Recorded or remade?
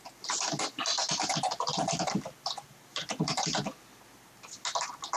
recorded